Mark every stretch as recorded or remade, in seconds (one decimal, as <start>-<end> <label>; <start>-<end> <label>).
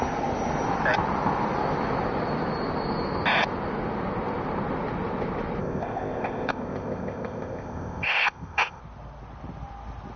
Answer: 0.0-5.6 recorded; 5.6-8.8 remade; 8.8-10.2 recorded